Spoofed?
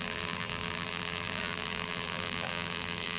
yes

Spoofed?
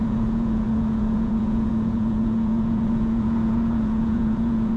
yes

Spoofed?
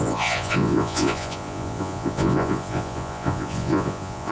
yes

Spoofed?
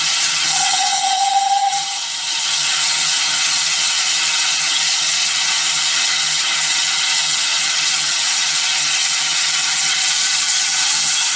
yes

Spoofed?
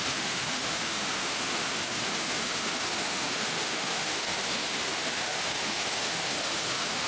yes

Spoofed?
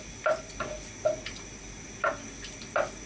no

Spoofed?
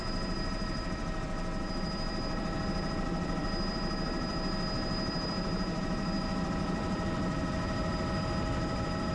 yes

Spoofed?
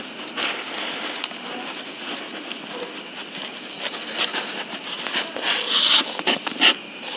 no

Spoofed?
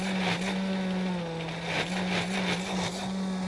no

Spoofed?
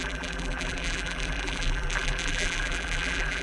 yes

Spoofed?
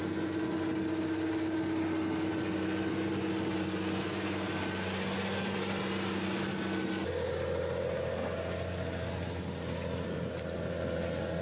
no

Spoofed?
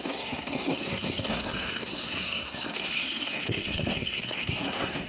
yes